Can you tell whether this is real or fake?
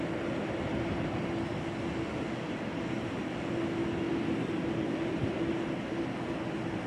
real